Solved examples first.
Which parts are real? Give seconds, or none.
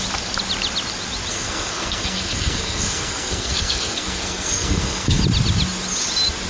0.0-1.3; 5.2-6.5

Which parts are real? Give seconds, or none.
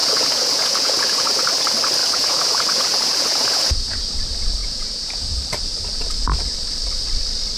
1.4-2.0; 4.0-4.6; 5.2-7.6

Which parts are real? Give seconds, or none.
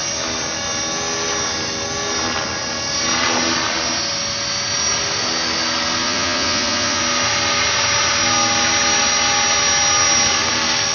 0.0-6.0; 7.0-10.9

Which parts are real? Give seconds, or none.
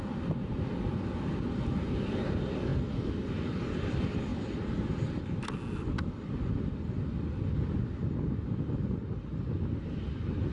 0.0-10.5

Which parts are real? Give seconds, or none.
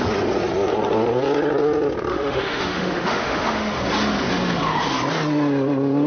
0.0-2.1; 3.8-6.1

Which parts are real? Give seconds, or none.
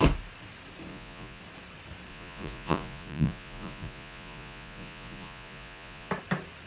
0.0-0.9; 1.4-2.1; 6.1-6.7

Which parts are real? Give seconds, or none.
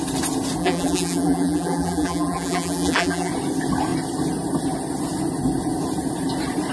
0.0-0.6; 3.3-6.7